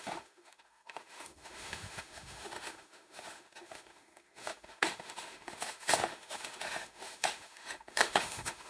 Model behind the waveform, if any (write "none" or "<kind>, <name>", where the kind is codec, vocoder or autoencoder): autoencoder, DAC-VAE